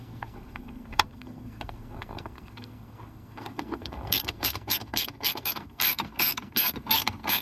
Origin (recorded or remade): remade